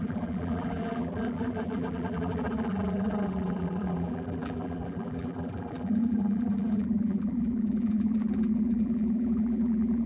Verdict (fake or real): fake